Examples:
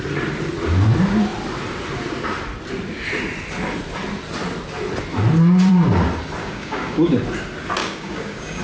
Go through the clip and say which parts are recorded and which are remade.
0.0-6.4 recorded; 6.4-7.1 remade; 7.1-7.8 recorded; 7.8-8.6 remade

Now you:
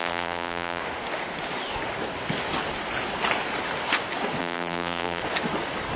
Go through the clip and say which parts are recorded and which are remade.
0.0-0.8 remade; 0.8-4.4 recorded; 4.4-5.2 remade; 5.2-6.0 recorded

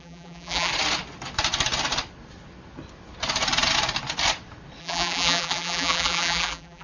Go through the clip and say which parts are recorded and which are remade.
0.0-0.7 remade; 0.7-4.8 recorded; 4.8-6.8 remade

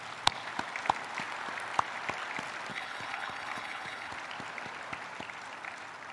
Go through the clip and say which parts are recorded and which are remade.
0.0-2.7 recorded; 2.7-4.1 remade; 4.1-6.1 recorded

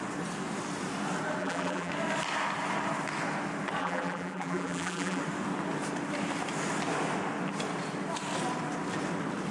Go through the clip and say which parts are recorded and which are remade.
0.0-1.4 recorded; 1.4-1.9 remade; 1.9-3.8 recorded; 3.8-5.2 remade; 5.2-9.5 recorded